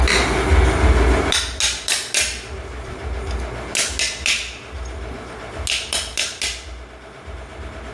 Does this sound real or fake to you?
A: real